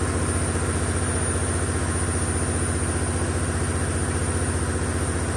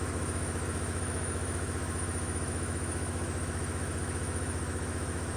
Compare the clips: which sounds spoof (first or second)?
second